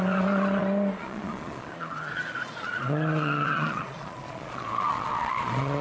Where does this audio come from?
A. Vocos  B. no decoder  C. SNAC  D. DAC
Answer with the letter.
A